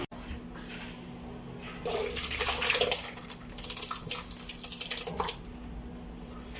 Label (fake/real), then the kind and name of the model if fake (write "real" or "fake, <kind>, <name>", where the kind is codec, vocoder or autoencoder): real